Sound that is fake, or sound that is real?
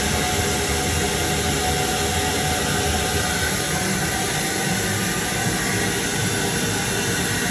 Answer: real